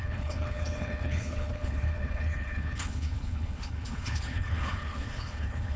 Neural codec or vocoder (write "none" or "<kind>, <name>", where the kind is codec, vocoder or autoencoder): codec, HILCodec